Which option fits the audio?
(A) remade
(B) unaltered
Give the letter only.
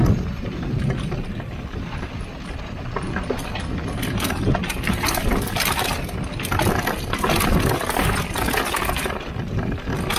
B